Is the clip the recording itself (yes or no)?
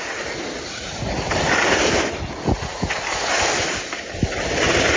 yes